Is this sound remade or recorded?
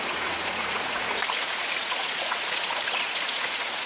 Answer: remade